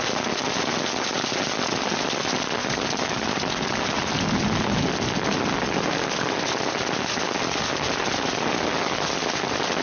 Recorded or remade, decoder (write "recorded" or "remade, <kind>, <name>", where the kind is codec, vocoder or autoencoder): recorded